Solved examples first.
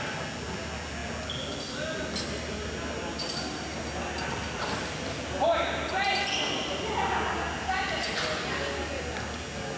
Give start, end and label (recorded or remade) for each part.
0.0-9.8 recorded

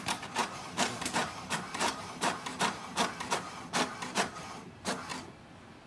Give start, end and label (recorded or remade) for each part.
0.0-5.1 remade; 5.1-5.9 recorded

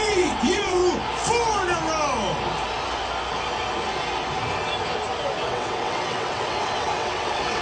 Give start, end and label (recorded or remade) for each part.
0.0-0.8 remade; 0.8-5.4 recorded; 5.4-7.6 remade

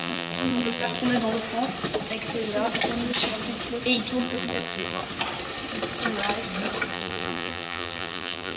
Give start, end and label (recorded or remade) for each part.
0.0-1.0 remade; 1.0-4.2 recorded; 4.2-5.0 remade; 5.0-6.9 recorded; 6.9-8.6 remade

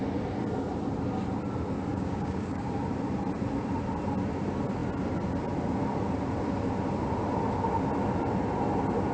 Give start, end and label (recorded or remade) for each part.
0.0-1.9 recorded; 1.9-2.7 remade; 2.7-9.1 recorded

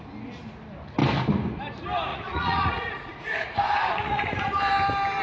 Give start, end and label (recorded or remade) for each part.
0.0-2.1 recorded; 2.1-4.6 remade; 4.6-5.2 recorded

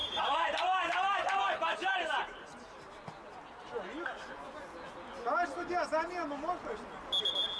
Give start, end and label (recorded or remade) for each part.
0.0-3.0 remade; 3.0-7.6 recorded